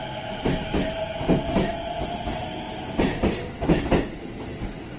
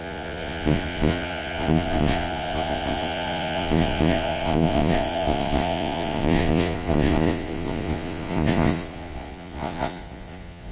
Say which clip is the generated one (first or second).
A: second